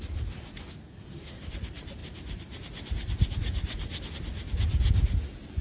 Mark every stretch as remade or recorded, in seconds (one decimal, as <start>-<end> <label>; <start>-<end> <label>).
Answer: 0.0-0.9 recorded; 0.9-1.5 remade; 1.5-5.6 recorded